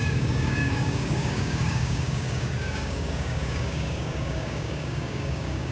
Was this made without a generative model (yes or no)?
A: no